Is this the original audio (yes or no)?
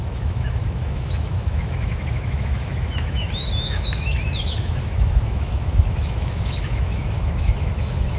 no